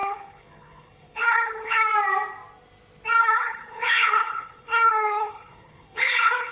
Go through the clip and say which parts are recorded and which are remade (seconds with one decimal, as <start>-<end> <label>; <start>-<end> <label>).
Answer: 0.0-1.9 remade; 1.9-3.2 recorded; 3.2-6.5 remade